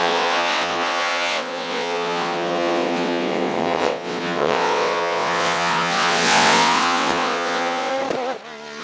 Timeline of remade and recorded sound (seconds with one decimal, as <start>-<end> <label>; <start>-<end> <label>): 0.0-7.9 remade; 7.9-8.8 recorded